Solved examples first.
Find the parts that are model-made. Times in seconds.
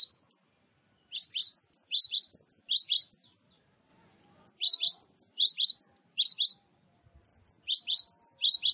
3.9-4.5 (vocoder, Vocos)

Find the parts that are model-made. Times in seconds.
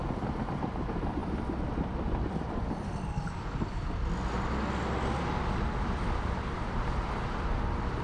none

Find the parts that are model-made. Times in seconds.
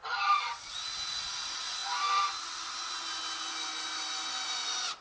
0.0-1.8 (vocoder, Vocos)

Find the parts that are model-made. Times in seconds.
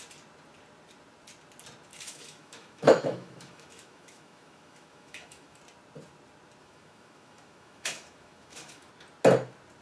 1.9-5.6 (autoencoder, DAC-VAE); 6.6-8.9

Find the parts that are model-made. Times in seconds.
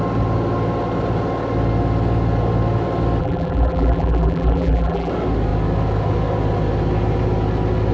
3.2-5.1 (vocoder, BigVGAN v2)